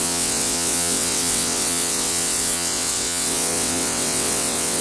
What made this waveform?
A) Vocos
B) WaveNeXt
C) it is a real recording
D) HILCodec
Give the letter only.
B